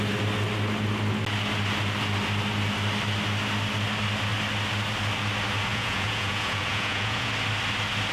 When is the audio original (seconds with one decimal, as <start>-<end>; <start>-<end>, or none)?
0.0-5.7; 7.3-8.1